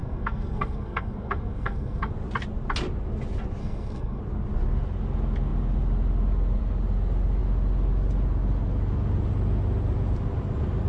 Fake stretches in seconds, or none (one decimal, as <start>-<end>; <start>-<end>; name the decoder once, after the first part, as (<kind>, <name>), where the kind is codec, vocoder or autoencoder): 0.0-2.1 (codec, SNAC); 3.6-4.2

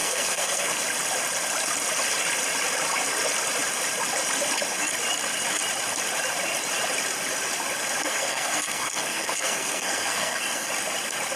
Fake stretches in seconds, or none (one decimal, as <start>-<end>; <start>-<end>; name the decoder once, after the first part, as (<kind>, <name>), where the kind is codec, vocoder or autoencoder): 0.0-0.8 (codec, SNAC); 8.0-10.7

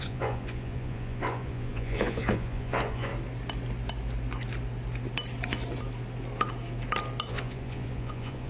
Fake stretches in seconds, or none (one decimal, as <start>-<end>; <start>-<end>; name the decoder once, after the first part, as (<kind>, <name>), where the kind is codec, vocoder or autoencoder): 0.0-3.1 (vocoder, Vocos); 7.3-8.5